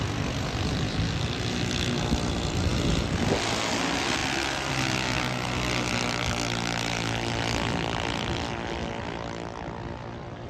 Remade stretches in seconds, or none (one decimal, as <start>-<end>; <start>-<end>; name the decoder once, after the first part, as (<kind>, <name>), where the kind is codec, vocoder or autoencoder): none